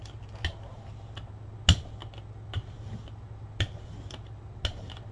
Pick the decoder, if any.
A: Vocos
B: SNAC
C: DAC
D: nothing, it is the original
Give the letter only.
D